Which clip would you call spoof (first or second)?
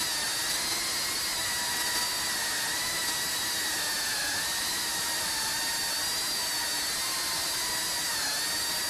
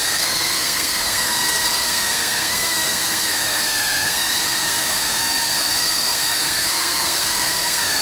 second